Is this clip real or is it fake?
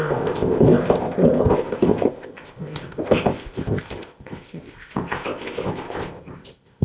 fake